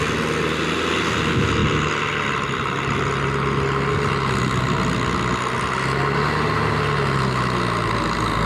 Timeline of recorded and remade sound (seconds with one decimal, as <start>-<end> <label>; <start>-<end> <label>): 0.0-8.5 recorded